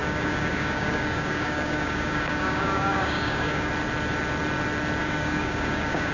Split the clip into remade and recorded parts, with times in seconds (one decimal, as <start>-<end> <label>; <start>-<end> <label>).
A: 0.0-3.7 remade; 3.7-5.0 recorded; 5.0-6.1 remade